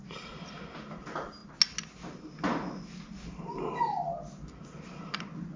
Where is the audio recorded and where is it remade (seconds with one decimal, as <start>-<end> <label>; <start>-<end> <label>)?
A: 0.0-5.6 recorded